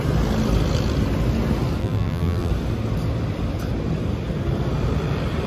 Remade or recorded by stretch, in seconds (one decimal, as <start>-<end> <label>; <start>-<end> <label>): 0.0-1.8 recorded; 1.8-2.5 remade; 2.5-5.5 recorded